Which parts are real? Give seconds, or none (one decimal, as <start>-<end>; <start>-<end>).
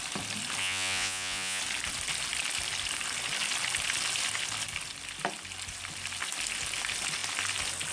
0.0-0.6; 1.6-7.9